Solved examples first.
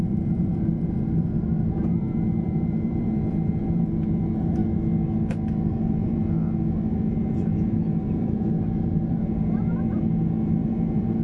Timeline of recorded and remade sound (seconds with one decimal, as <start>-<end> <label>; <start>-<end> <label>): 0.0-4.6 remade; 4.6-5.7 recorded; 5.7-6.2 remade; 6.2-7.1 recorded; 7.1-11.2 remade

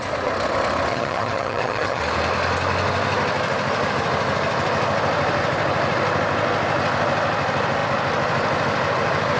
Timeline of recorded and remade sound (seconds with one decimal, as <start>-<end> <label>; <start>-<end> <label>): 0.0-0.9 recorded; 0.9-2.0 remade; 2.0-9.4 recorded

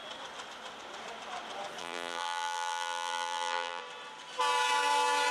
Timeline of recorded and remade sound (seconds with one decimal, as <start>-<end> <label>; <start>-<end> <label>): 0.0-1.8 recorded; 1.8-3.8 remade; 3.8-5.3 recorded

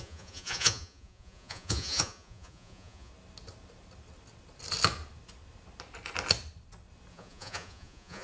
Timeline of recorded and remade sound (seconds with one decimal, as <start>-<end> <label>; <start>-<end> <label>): 0.0-3.1 remade; 3.1-7.1 recorded; 7.1-8.2 remade

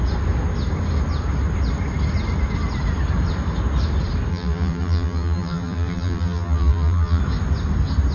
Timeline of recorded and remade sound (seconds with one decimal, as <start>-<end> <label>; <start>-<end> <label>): 0.0-4.3 recorded; 4.3-7.2 remade; 7.2-8.1 recorded

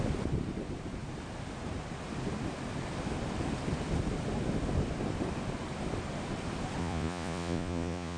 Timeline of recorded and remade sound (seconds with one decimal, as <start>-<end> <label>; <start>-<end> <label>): 0.0-6.8 recorded; 6.8-8.2 remade

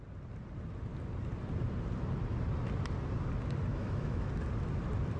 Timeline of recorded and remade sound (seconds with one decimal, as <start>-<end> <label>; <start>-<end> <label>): 0.0-3.7 recorded; 3.7-4.3 remade; 4.3-5.2 recorded